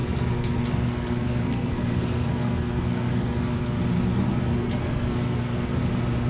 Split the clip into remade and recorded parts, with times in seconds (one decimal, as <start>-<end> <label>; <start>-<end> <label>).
0.0-3.8 remade; 3.8-4.5 recorded; 4.5-5.8 remade; 5.8-6.3 recorded